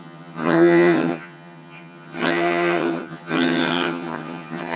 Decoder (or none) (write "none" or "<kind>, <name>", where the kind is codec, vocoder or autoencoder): vocoder, HiFi-GAN